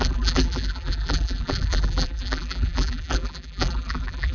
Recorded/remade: remade